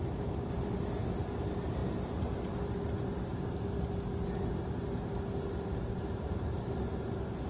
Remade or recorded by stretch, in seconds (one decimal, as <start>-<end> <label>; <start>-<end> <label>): 0.0-7.5 recorded